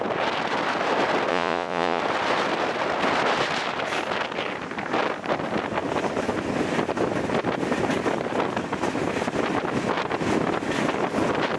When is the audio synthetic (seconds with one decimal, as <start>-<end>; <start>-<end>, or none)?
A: 1.3-2.0